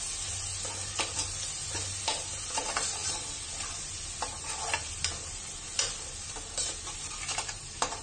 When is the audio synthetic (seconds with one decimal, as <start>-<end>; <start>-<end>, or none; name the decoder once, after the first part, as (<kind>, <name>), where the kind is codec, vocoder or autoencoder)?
none